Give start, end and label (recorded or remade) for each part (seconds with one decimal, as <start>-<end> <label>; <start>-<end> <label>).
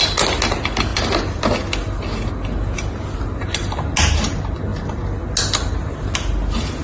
0.0-6.8 recorded